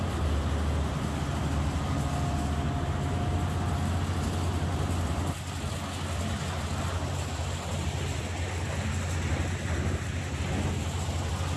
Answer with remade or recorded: recorded